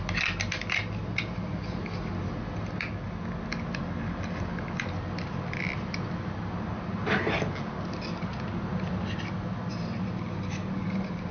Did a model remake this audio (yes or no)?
no